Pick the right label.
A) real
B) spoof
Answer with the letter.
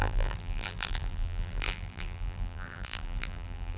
B